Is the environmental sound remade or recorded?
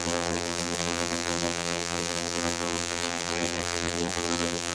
remade